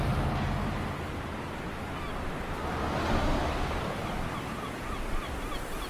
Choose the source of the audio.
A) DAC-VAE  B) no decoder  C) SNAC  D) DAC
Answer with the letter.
B